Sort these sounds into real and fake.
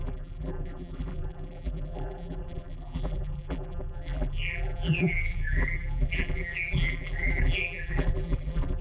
fake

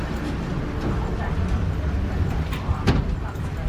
real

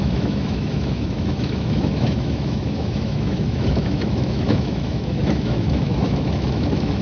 fake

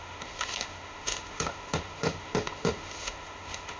fake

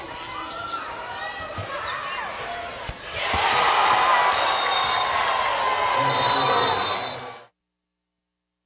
real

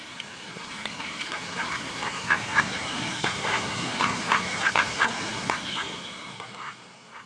fake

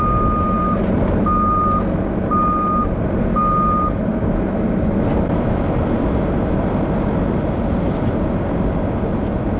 real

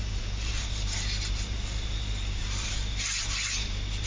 fake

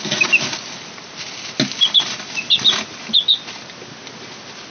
real